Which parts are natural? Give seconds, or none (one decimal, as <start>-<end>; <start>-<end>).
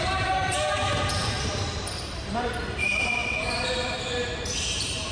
none